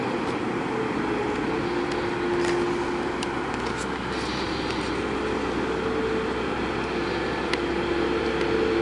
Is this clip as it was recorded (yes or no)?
yes